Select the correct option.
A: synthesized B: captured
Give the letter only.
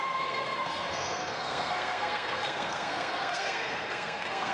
A